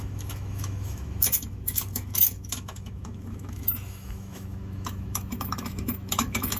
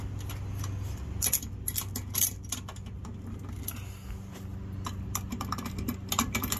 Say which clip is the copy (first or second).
first